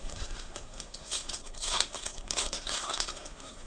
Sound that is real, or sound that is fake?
fake